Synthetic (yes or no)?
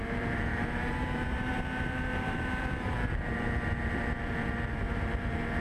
yes